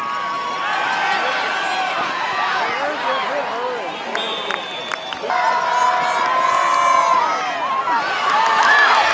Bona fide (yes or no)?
yes